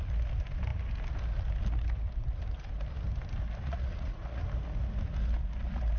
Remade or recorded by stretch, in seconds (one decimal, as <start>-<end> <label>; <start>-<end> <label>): 0.0-3.6 recorded; 3.6-4.4 remade; 4.4-6.0 recorded